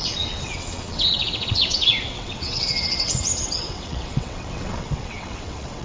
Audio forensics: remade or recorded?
remade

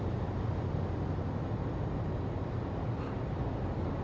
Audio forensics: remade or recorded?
recorded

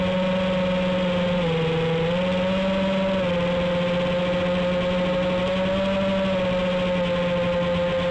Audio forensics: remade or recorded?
recorded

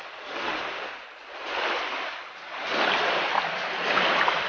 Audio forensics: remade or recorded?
recorded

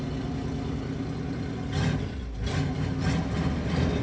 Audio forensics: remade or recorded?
recorded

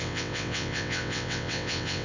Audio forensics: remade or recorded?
remade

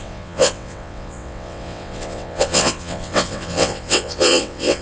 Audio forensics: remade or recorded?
remade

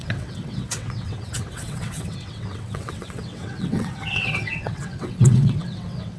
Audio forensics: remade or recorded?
remade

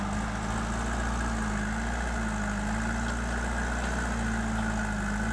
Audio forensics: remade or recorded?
recorded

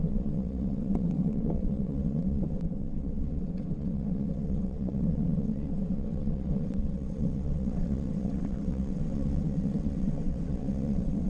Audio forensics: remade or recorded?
remade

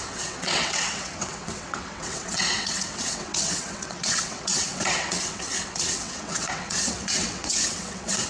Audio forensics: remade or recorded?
remade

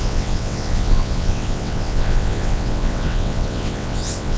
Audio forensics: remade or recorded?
remade